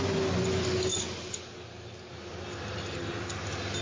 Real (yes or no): yes